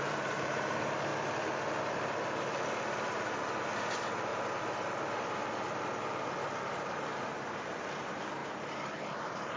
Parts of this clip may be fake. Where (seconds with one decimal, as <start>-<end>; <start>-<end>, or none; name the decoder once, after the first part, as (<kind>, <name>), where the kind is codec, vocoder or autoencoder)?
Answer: 0.0-1.1 (vocoder, BigVGAN v2); 3.9-4.3; 6.8-8.4; 9.2-9.6